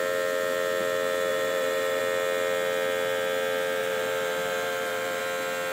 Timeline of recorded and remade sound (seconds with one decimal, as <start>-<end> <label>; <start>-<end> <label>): 0.0-1.3 recorded; 1.3-2.0 remade; 2.0-3.8 recorded; 3.8-5.2 remade; 5.2-5.7 recorded